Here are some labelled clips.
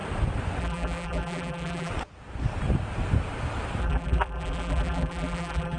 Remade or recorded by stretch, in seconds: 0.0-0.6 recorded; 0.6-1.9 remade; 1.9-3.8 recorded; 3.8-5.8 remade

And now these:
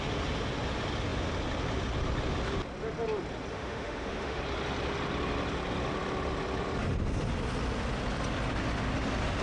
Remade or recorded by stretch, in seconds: 0.0-3.5 recorded; 3.5-4.4 remade; 4.4-9.4 recorded

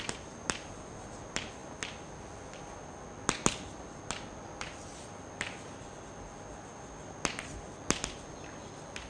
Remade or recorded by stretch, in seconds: 0.0-9.1 recorded

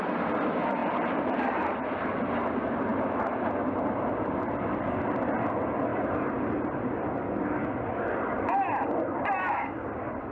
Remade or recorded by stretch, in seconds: 0.0-0.8 recorded; 0.8-1.8 remade; 1.8-10.3 recorded

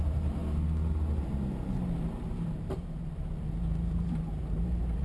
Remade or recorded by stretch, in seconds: 0.0-0.4 remade; 0.4-1.9 recorded; 1.9-5.0 remade